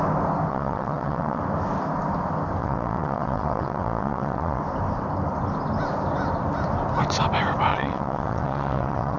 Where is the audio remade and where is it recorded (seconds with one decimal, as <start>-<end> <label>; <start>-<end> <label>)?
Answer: 0.0-0.5 recorded; 0.5-1.4 remade; 1.4-2.6 recorded; 2.6-4.6 remade; 4.6-7.7 recorded; 7.7-9.2 remade